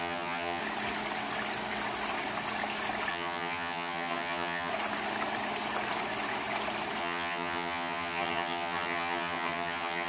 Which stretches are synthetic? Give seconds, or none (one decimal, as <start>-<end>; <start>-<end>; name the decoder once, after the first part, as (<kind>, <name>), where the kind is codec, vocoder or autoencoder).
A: 0.0-0.6 (vocoder, HiFi-GAN); 3.1-4.7; 7.0-10.1